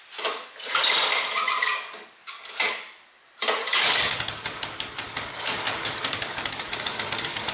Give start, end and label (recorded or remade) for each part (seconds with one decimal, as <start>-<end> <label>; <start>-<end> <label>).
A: 0.0-1.6 recorded; 1.6-2.8 remade; 2.8-3.6 recorded; 3.6-7.5 remade

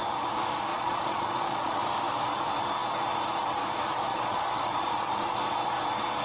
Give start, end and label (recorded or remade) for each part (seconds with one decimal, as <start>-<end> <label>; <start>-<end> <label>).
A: 0.0-0.7 recorded; 0.7-1.7 remade; 1.7-4.1 recorded; 4.1-5.1 remade; 5.1-6.2 recorded